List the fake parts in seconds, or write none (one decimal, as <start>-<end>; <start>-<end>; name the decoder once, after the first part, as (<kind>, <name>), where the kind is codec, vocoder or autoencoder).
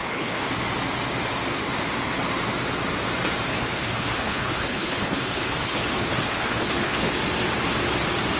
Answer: 0.0-0.5 (codec, HILCodec); 3.5-7.1